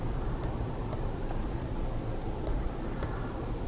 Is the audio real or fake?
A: real